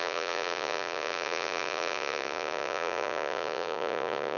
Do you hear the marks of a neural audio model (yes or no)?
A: yes